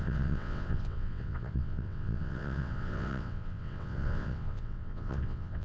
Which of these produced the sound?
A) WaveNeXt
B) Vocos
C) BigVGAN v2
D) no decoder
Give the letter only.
A